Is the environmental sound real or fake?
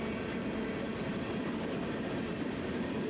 real